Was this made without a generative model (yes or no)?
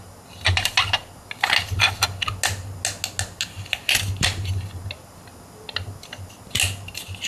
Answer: yes